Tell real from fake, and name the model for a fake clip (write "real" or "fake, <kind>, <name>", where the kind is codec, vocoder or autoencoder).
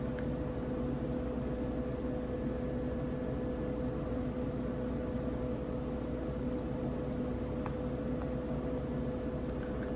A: real